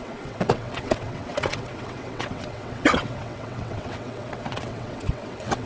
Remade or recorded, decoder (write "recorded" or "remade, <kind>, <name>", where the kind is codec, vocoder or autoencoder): remade, vocoder, WaveNeXt